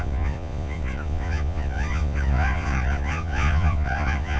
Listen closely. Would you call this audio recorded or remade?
remade